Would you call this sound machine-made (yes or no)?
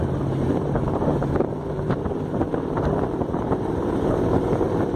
yes